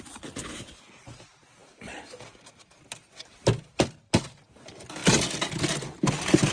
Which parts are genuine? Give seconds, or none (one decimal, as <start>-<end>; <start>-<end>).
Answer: 0.0-0.4; 1.0-6.5